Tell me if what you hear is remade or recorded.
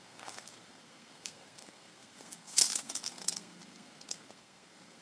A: remade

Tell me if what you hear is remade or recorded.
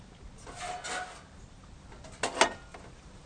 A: recorded